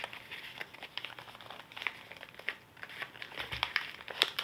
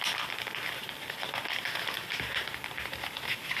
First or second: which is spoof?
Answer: first